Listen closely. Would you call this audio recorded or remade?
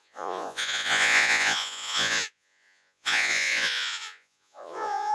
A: remade